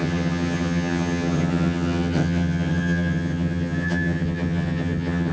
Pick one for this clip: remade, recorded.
remade